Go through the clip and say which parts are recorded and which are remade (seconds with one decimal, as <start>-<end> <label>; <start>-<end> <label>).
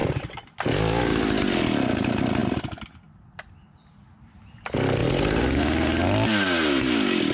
0.0-1.0 remade; 1.0-5.0 recorded; 5.0-5.6 remade; 5.6-7.3 recorded